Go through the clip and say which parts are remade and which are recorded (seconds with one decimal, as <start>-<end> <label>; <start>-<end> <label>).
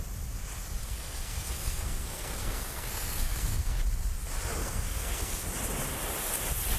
0.0-0.8 recorded; 0.8-3.8 remade; 3.8-4.6 recorded; 4.6-5.5 remade; 5.5-6.8 recorded